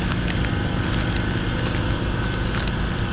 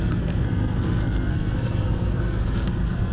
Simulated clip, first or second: second